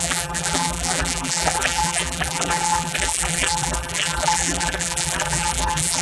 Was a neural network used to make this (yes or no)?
yes